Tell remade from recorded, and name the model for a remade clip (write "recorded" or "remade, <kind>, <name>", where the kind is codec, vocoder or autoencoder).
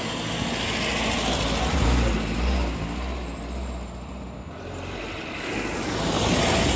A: recorded